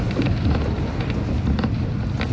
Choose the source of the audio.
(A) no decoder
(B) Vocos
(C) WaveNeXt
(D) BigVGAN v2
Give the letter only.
A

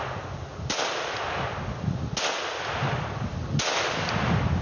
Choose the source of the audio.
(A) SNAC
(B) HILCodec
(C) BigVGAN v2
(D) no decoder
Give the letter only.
D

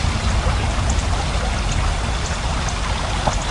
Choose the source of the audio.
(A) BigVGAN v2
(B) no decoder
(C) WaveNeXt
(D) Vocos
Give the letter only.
B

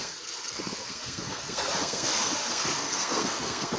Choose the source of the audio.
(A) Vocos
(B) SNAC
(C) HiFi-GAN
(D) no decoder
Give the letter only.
B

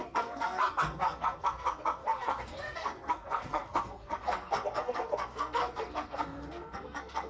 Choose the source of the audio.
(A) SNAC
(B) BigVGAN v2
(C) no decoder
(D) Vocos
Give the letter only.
A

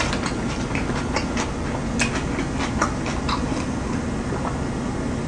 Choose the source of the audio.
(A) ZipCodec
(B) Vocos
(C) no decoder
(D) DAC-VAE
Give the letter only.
C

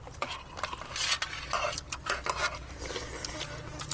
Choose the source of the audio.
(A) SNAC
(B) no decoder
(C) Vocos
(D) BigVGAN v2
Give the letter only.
B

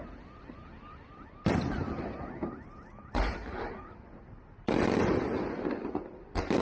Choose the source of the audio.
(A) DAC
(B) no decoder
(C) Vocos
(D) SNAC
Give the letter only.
B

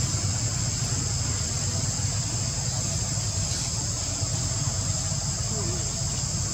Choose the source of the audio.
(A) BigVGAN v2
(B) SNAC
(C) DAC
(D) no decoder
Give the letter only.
D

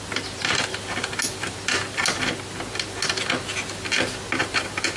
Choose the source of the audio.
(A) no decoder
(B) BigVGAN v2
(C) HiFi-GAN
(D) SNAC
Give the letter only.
A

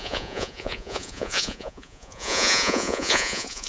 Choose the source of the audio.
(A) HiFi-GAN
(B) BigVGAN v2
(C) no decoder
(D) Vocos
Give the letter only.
D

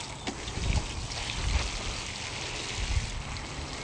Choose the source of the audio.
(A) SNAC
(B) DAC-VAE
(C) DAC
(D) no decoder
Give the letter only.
D